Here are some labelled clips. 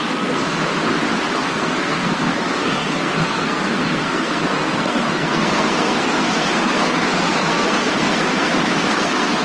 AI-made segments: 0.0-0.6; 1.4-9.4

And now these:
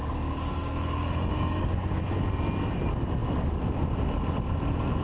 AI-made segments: 0.0-2.0

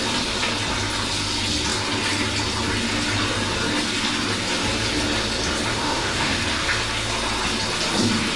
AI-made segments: 5.7-6.4

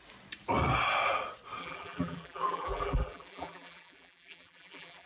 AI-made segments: 1.6-5.1

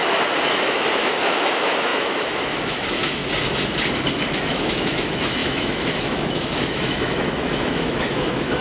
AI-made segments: 0.5-3.2; 4.5-8.6

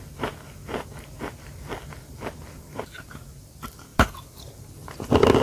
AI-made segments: 3.9-4.5

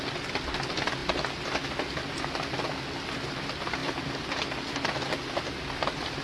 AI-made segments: none